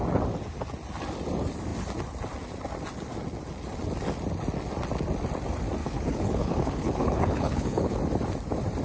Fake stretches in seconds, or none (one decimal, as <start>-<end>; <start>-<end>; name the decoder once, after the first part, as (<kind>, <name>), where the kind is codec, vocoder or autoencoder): 5.8-8.0 (codec, HILCodec)